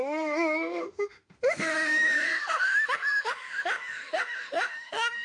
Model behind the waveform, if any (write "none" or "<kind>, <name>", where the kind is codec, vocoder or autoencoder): autoencoder, DAC-VAE